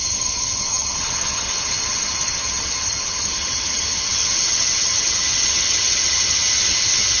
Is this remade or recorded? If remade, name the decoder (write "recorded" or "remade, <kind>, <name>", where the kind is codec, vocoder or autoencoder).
remade, vocoder, HiFi-GAN